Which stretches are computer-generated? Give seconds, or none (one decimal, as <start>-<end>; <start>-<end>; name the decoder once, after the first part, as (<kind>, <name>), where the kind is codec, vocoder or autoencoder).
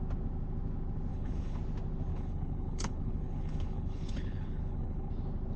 1.1-1.6 (codec, HILCodec); 2.1-5.1